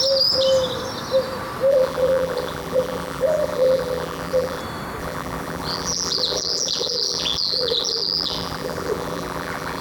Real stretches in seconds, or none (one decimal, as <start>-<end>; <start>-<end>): 0.0-1.7; 4.6-5.0